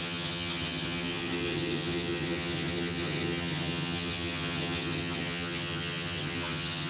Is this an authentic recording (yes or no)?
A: no